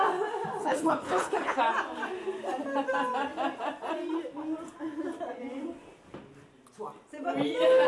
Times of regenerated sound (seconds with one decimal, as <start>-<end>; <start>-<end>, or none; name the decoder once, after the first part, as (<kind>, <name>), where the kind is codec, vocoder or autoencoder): 0.6-1.6 (codec, HILCodec)